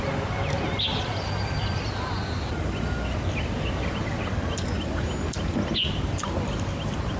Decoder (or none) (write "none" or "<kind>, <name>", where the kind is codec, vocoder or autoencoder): none